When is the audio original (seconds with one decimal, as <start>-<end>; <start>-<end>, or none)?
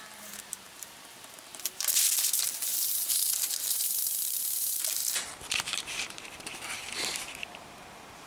5.0-5.5